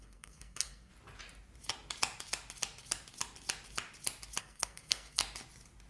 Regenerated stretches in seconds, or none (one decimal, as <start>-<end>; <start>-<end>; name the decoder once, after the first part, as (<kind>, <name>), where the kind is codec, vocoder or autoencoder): 0.0-0.9 (codec, SNAC); 4.4-5.2